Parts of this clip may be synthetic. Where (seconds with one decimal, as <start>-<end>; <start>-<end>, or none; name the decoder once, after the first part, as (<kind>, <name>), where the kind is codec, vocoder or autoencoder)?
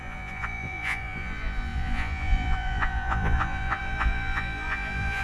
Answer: 0.0-5.2 (vocoder, Vocos)